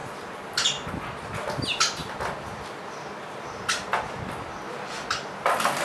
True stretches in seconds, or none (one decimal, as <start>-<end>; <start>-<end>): 0.0-2.0; 4.2-5.8